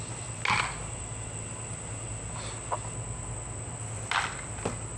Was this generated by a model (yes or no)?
no